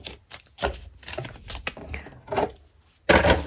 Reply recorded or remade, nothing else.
recorded